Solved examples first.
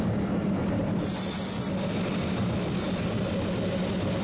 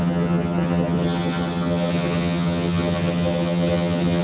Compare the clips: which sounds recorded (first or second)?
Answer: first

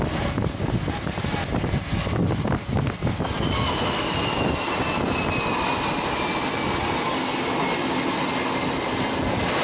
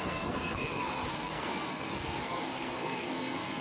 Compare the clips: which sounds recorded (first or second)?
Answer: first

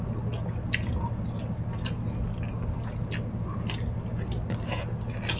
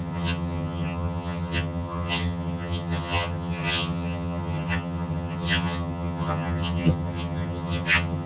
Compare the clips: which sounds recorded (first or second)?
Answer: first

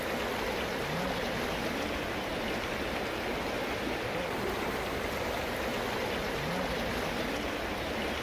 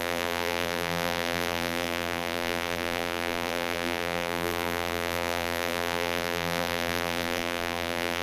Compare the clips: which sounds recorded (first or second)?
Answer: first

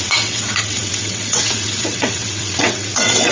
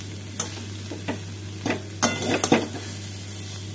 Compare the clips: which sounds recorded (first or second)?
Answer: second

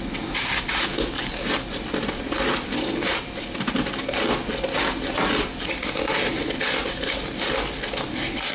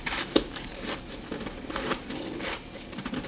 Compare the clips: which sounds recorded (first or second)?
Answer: first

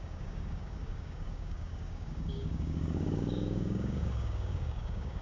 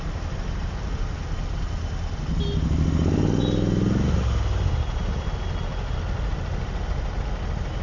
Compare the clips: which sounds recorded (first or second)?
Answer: second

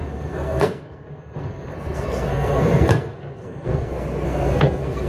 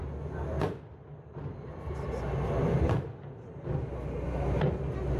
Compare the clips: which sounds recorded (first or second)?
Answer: second